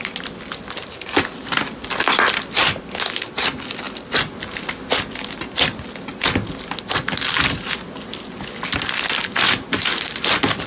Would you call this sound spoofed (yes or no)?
no